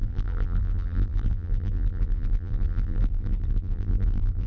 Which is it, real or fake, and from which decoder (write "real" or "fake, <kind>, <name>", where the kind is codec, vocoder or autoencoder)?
fake, vocoder, BigVGAN v2